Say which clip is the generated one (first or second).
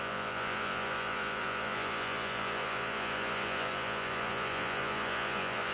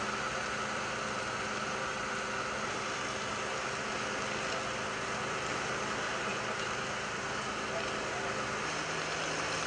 first